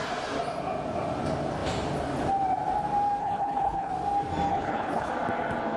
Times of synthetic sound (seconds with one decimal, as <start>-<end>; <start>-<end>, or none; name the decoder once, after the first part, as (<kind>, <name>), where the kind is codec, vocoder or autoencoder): 3.2-3.9 (codec, HILCodec); 4.5-5.1